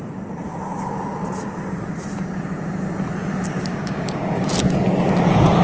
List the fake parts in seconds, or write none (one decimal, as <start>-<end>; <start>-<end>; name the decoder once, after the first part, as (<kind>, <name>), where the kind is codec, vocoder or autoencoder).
3.7-4.5 (codec, DAC)